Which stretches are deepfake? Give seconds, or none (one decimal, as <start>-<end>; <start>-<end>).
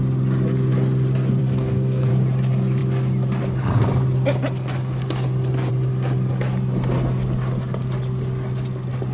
1.4-2.1